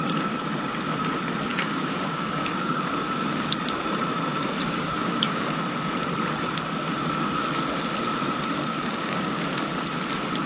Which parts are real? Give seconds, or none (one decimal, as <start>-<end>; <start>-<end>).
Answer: 0.0-1.5; 3.5-4.6; 5.5-8.7; 9.4-10.5